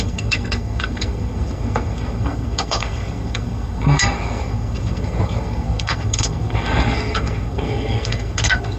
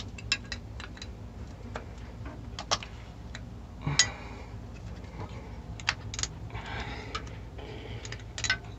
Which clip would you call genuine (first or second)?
second